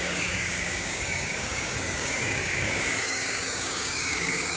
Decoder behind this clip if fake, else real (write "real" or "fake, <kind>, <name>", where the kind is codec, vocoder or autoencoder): fake, codec, DAC